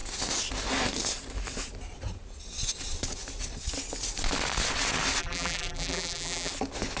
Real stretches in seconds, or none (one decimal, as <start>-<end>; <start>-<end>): 0.0-5.2; 6.5-7.0